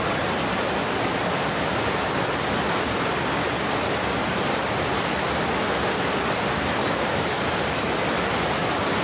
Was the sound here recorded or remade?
recorded